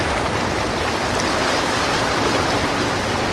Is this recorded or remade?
recorded